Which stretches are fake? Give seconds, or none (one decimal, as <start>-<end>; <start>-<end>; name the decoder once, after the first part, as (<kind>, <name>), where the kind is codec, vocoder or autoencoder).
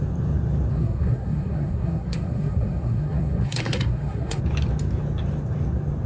0.7-4.4 (codec, SNAC)